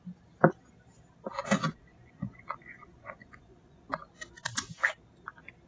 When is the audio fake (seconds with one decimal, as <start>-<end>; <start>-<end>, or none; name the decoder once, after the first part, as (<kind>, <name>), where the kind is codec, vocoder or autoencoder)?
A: 1.9-3.9 (vocoder, Vocos)